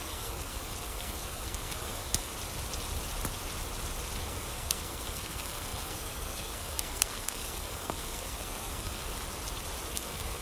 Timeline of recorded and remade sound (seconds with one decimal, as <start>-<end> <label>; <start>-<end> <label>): 0.0-2.3 remade; 2.3-4.2 recorded; 4.2-9.1 remade; 9.1-9.9 recorded; 9.9-10.4 remade